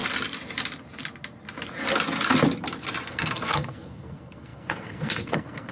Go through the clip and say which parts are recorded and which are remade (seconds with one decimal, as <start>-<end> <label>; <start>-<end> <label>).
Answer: 0.0-3.1 recorded; 3.1-5.7 remade